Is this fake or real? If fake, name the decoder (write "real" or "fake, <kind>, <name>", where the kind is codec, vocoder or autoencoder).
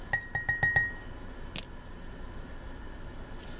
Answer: real